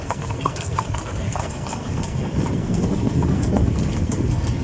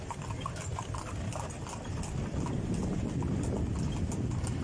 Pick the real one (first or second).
second